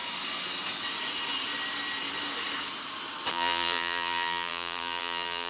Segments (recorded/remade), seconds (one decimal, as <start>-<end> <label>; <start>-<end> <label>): 0.0-3.3 recorded; 3.3-5.5 remade